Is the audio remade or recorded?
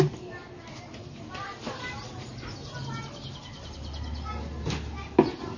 recorded